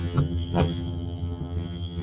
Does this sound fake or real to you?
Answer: fake